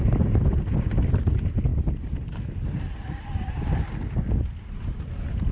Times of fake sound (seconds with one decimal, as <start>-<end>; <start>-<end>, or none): none